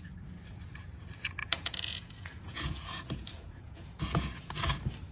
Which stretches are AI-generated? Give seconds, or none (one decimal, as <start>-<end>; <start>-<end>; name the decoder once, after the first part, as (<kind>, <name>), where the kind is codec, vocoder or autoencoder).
1.4-4.5 (vocoder, Vocos)